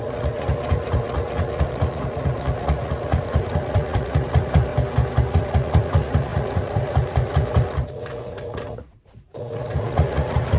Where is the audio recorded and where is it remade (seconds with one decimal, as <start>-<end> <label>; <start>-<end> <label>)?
0.0-4.7 remade; 4.7-5.3 recorded; 5.3-10.6 remade